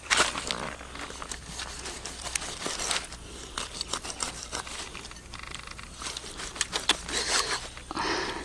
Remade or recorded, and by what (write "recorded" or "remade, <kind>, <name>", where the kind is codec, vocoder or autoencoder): recorded